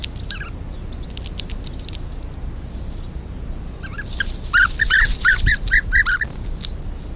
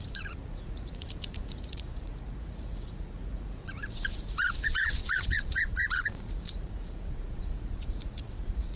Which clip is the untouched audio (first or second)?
first